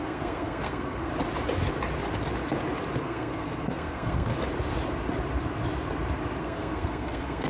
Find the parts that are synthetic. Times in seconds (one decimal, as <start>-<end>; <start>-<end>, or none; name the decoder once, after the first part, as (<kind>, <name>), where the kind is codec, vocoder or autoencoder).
0.0-1.1 (codec, SNAC); 3.0-4.3; 6.4-7.5

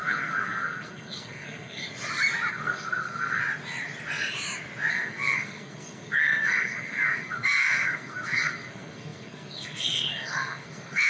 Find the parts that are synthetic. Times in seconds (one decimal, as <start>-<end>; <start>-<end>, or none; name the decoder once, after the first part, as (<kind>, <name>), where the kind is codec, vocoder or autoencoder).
0.0-1.8 (codec, SNAC); 2.5-3.4; 4.9-11.1

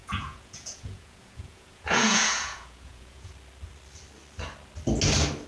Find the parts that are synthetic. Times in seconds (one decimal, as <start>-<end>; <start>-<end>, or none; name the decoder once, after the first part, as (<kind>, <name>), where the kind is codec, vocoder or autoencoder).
0.0-3.3 (vocoder, Vocos)

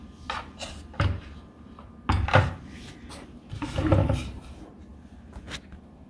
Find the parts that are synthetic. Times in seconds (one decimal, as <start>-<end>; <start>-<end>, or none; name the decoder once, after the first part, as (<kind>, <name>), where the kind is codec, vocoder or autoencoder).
none

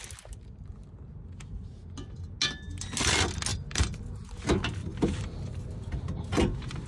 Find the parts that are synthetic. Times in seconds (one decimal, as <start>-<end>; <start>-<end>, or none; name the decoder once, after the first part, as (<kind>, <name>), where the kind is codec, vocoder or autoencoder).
3.5-4.0 (vocoder, BigVGAN v2); 4.8-5.9